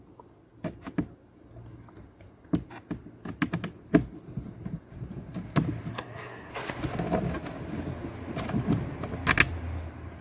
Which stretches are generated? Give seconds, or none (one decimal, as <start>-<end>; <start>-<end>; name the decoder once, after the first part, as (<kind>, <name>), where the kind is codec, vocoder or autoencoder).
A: 5.9-6.5 (codec, SNAC)